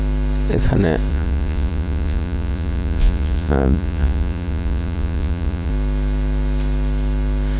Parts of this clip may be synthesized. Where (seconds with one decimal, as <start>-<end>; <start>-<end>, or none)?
1.1-5.7